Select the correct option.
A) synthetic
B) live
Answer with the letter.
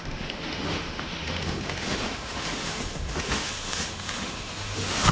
A